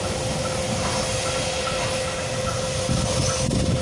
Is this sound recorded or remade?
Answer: recorded